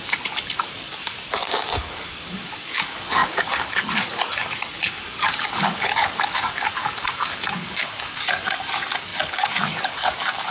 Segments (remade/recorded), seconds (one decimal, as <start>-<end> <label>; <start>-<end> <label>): 0.0-10.5 remade